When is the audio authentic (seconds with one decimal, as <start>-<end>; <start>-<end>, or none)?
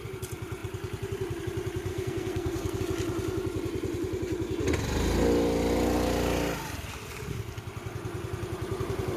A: 0.0-1.9; 2.8-9.2